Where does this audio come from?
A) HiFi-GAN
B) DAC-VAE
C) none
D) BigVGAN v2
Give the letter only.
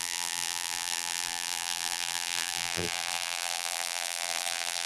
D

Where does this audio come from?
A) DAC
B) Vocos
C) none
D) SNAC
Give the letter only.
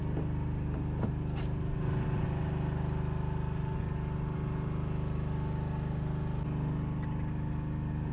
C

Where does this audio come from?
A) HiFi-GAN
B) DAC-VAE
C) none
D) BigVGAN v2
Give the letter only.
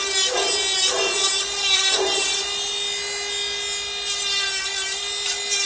C